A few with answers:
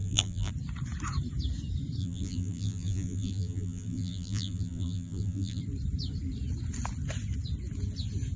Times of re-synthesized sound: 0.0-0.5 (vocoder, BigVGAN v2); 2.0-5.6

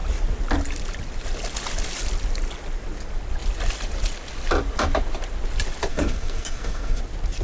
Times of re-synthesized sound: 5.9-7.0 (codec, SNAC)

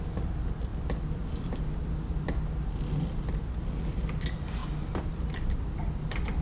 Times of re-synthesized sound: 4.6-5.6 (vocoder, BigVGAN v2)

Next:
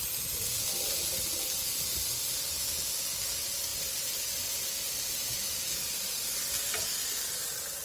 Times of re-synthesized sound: none

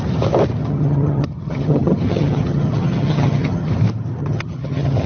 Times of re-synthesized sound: 0.6-3.7 (vocoder, HiFi-GAN); 4.2-5.1

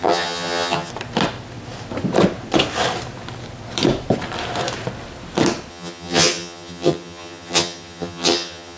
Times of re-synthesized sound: 0.0-0.9 (vocoder, HiFi-GAN); 5.7-8.8

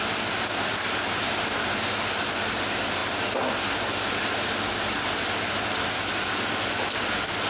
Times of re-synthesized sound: none

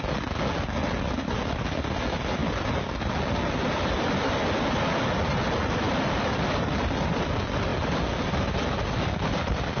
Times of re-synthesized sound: none